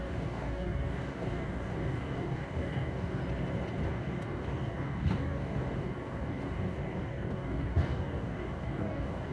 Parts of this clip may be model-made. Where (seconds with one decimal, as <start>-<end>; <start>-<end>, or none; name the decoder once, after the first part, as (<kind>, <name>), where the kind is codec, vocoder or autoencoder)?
0.0-3.2 (codec, DAC); 3.9-9.3